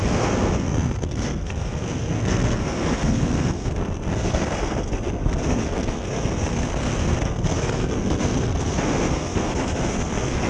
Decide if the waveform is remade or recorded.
remade